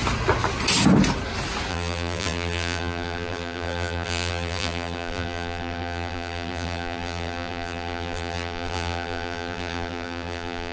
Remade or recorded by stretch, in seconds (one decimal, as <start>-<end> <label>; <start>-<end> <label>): 0.0-1.7 recorded; 1.7-10.7 remade